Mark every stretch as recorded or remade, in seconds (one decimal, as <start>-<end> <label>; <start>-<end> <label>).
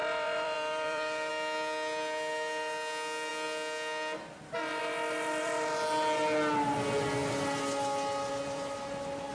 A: 0.0-1.3 remade; 1.3-9.3 recorded